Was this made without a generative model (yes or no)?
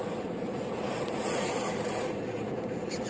no